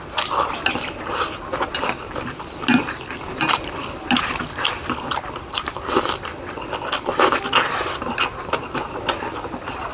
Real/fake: fake